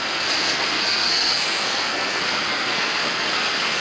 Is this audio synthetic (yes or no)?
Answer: yes